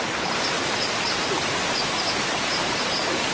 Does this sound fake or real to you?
real